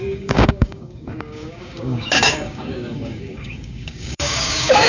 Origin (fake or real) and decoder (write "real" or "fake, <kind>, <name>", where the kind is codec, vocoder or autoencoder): fake, codec, DAC